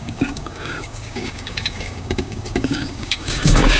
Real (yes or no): no